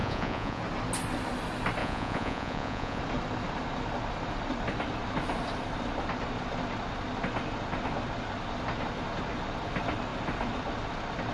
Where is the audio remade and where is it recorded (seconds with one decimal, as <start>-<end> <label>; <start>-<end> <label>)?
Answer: 0.0-0.6 remade; 0.6-1.8 recorded; 1.8-3.0 remade; 3.0-11.3 recorded